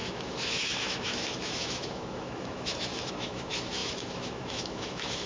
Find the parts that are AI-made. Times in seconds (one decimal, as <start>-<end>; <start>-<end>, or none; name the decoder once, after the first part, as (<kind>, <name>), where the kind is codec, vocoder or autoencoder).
0.0-5.3 (autoencoder, DAC-VAE)